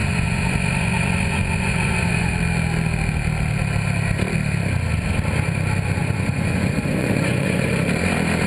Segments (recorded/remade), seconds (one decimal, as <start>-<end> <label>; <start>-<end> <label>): 0.0-2.3 remade; 2.3-6.0 recorded; 6.0-7.7 remade; 7.7-8.5 recorded